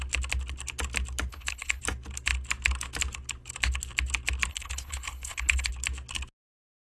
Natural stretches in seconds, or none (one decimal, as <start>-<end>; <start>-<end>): 0.0-1.3; 1.8-4.5; 5.7-6.8